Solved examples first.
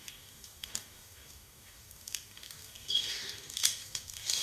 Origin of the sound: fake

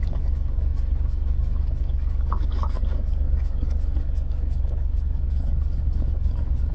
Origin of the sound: fake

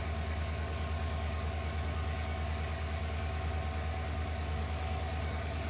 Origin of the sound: fake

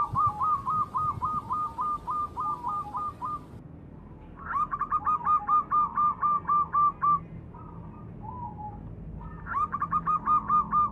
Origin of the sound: real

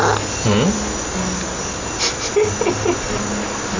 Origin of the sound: real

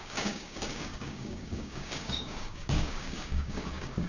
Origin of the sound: fake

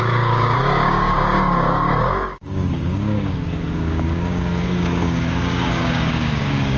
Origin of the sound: fake